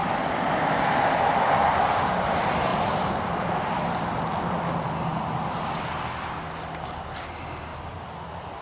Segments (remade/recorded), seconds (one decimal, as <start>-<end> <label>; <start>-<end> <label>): 0.0-8.6 recorded